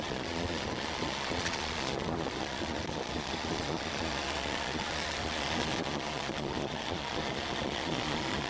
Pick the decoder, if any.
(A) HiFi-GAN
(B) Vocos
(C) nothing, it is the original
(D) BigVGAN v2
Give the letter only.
B